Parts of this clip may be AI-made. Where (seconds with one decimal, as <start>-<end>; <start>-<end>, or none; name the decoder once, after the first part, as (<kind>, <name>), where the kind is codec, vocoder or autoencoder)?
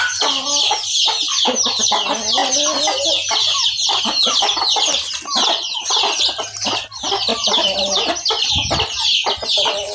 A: 7.3-8.0 (vocoder, BigVGAN v2)